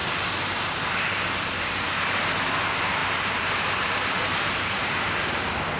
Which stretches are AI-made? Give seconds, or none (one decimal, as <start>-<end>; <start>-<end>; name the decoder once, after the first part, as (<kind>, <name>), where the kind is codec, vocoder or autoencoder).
0.0-2.2 (vocoder, BigVGAN v2); 3.0-5.0